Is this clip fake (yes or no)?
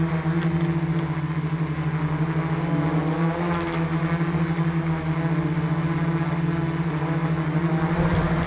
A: no